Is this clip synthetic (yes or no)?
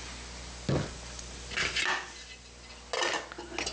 no